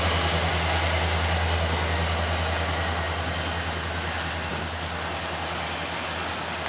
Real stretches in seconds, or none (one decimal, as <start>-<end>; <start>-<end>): 0.0-6.7